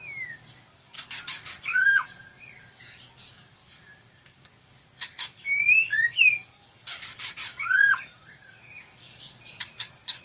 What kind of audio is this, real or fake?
fake